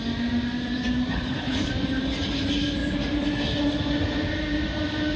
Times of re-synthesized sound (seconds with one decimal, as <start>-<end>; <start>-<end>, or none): 1.1-1.7